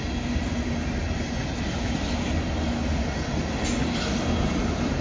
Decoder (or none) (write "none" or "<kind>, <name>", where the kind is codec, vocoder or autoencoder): none